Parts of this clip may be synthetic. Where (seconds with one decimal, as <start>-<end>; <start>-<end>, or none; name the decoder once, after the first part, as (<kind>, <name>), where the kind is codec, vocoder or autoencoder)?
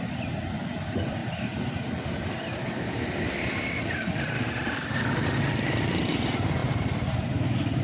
0.0-7.8 (vocoder, BigVGAN v2)